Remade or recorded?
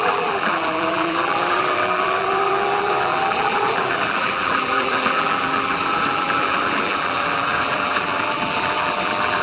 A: remade